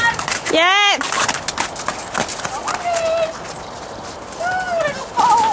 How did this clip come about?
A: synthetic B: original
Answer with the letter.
B